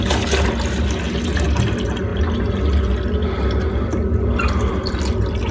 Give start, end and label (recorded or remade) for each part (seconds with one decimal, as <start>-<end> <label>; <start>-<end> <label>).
0.0-5.5 recorded

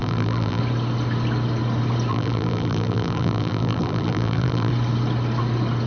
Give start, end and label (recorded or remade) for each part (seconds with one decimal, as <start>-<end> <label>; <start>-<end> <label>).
0.0-0.6 remade; 0.6-2.1 recorded; 2.1-4.7 remade; 4.7-5.9 recorded

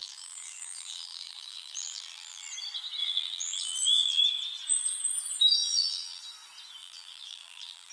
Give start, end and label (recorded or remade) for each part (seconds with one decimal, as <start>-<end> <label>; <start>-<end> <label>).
0.0-2.5 remade; 2.5-3.0 recorded; 3.0-4.2 remade; 4.2-5.6 recorded; 5.6-6.2 remade; 6.2-6.8 recorded; 6.8-7.9 remade

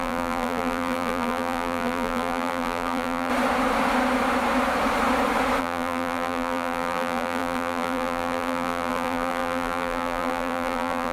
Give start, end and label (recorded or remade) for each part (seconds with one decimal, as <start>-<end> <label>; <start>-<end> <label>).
0.0-3.3 remade; 3.3-5.6 recorded; 5.6-11.1 remade

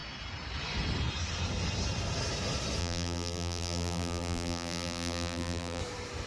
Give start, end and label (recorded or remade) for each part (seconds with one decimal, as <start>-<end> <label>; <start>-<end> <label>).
0.0-2.8 recorded; 2.8-5.8 remade; 5.8-6.3 recorded

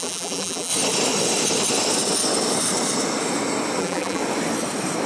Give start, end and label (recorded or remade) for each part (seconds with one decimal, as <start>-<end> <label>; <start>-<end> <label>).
0.0-0.7 remade; 0.7-3.8 recorded; 3.8-4.2 remade; 4.2-5.1 recorded

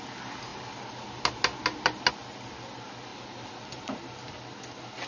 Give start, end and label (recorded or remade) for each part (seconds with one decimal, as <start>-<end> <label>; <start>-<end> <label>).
0.0-3.1 recorded; 3.1-4.0 remade; 4.0-5.1 recorded